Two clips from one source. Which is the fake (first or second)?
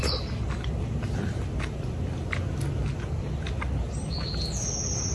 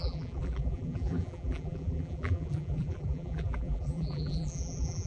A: second